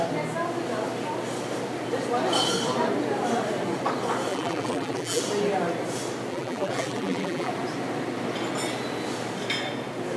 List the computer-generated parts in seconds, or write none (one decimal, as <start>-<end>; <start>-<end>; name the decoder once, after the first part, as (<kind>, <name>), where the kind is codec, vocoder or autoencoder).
4.3-5.2 (vocoder, BigVGAN v2); 6.3-7.5